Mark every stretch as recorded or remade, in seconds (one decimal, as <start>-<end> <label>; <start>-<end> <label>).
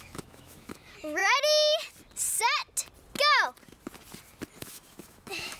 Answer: 0.0-1.2 remade; 1.2-4.6 recorded; 4.6-5.6 remade